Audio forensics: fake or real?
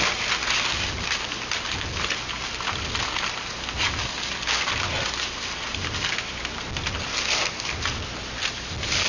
real